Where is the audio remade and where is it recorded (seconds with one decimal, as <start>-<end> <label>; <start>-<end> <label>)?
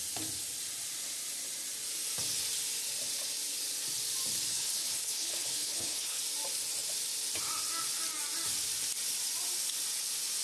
0.0-4.5 recorded; 4.5-6.2 remade; 6.2-10.4 recorded